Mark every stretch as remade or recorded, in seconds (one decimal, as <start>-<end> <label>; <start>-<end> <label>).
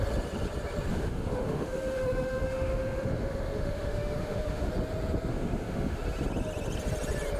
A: 0.0-0.9 recorded; 0.9-4.7 remade; 4.7-5.3 recorded; 5.3-6.0 remade; 6.0-7.4 recorded